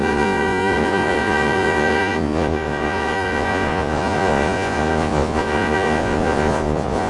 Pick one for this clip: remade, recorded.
remade